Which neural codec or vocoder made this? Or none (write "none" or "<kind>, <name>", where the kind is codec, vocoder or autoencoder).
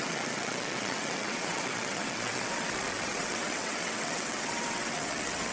vocoder, WaveNeXt